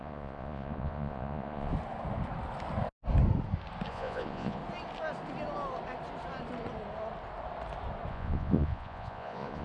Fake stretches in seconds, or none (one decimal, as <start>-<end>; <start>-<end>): 0.0-1.7; 3.9-4.6; 8.1-9.6